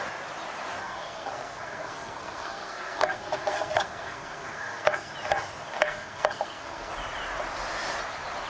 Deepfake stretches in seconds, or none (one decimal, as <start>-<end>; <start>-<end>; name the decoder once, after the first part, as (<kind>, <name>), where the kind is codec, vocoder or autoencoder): 0.8-5.1 (codec, SNAC); 5.7-6.9